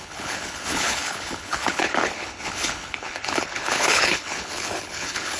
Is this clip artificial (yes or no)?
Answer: yes